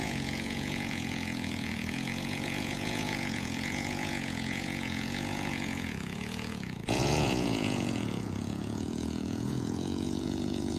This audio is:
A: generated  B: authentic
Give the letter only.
A